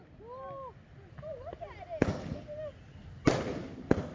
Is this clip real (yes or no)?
yes